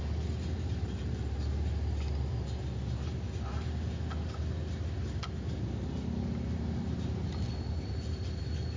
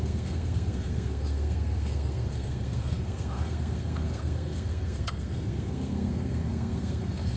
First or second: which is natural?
first